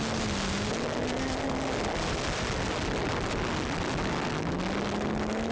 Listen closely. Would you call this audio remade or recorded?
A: recorded